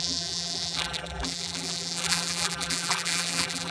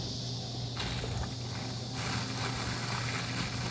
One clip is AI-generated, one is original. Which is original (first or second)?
second